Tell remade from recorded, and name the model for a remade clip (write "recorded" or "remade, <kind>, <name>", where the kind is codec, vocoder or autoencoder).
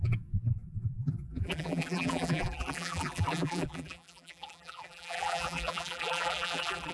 remade, vocoder, BigVGAN v2